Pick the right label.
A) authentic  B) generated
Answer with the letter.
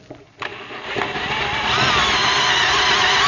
A